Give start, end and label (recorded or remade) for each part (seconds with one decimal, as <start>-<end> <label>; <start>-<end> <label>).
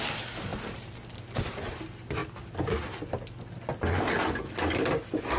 0.0-0.5 recorded; 0.5-1.4 remade; 1.4-5.4 recorded